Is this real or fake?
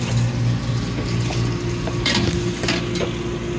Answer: real